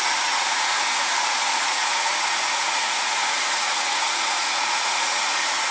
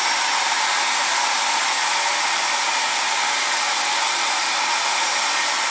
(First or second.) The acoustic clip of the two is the second